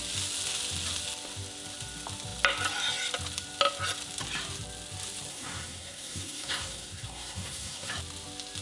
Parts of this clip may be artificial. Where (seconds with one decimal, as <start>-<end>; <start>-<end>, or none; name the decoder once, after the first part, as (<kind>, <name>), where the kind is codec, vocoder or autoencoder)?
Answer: 5.3-7.9 (codec, SNAC)